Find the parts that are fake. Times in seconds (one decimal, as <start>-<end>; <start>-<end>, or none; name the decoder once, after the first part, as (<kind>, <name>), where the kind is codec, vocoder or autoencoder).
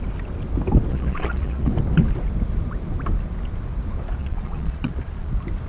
0.9-1.7 (vocoder, Vocos); 4.2-5.3